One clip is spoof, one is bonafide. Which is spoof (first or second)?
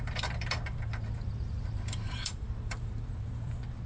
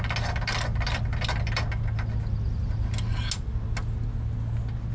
first